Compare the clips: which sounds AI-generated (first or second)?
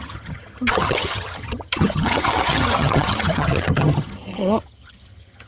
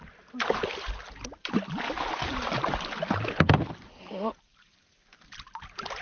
first